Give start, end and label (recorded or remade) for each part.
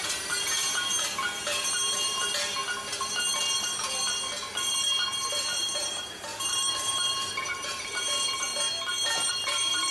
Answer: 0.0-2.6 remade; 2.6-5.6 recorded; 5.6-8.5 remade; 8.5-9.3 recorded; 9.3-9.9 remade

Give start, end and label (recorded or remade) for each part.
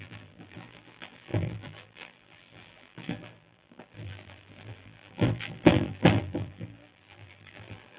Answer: 0.0-8.0 remade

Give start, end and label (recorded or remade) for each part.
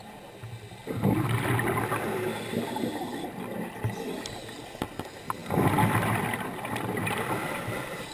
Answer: 0.0-8.1 recorded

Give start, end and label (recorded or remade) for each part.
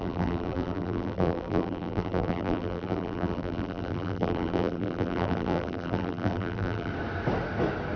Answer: 0.0-6.9 remade; 6.9-8.0 recorded